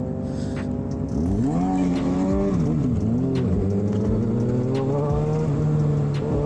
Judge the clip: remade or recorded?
recorded